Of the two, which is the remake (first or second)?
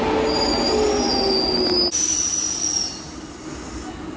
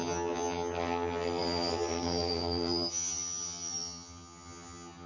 second